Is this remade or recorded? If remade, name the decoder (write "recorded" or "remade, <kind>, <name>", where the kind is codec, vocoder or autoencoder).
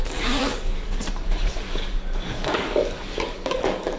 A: remade, codec, DAC